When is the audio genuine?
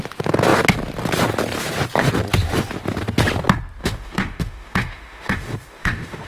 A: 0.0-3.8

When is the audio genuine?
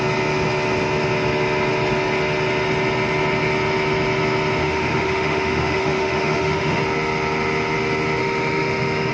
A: 0.0-4.6; 6.8-8.2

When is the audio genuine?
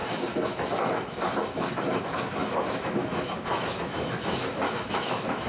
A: none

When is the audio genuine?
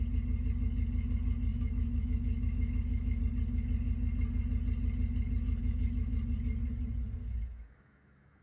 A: 0.0-1.5; 3.2-5.6; 6.1-7.2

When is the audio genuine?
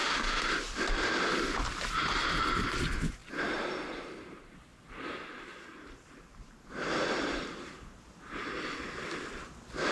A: 0.5-9.9